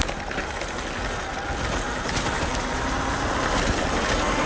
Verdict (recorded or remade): recorded